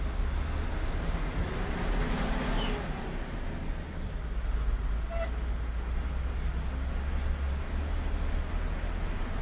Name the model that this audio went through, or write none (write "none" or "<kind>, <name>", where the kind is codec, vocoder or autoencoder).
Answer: none